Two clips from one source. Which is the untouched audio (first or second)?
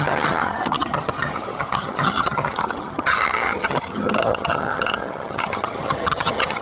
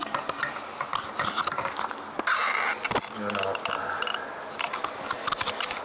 second